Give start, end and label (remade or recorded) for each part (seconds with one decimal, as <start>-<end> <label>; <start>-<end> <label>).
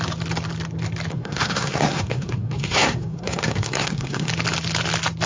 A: 0.0-1.1 recorded; 1.1-4.3 remade; 4.3-5.3 recorded